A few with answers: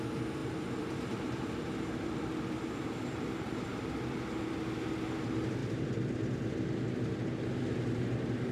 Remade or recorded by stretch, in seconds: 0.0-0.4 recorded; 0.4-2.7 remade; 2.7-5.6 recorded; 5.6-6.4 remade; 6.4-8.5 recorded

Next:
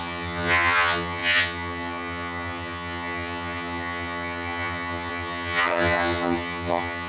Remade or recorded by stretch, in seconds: 0.0-7.1 remade

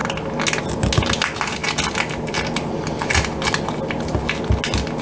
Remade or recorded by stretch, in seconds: 0.0-5.0 recorded